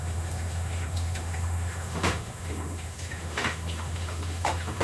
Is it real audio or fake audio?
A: fake